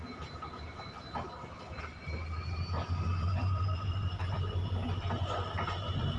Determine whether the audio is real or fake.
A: real